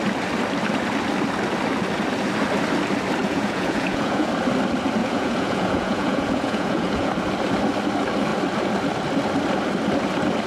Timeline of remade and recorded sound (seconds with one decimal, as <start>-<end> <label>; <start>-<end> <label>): 0.0-3.2 recorded; 3.2-4.3 remade; 4.3-5.0 recorded; 5.0-7.1 remade; 7.1-10.5 recorded